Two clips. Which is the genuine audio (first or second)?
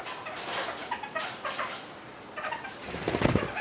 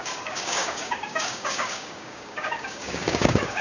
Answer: first